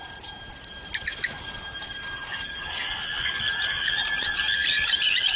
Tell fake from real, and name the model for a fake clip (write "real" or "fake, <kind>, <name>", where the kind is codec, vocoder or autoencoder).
real